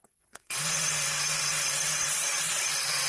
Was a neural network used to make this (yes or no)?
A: yes